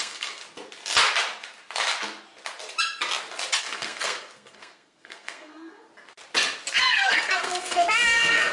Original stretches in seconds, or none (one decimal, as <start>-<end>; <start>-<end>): 0.4-3.6; 5.9-6.8